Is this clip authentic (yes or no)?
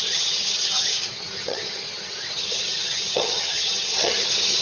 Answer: no